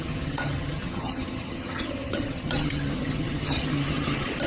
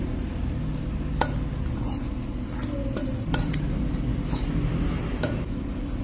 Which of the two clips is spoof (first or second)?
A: first